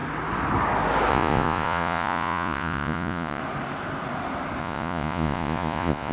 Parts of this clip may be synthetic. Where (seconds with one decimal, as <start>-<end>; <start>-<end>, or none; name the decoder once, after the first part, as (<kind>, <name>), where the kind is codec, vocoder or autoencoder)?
1.1-3.4 (vocoder, Vocos); 4.6-6.1